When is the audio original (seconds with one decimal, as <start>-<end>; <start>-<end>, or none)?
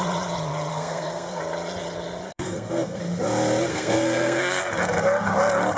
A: 0.0-0.7; 1.4-2.3; 3.0-3.7; 4.6-5.8